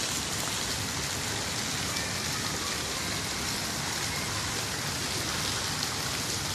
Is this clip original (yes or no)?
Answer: yes